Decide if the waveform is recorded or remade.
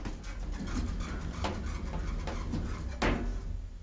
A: recorded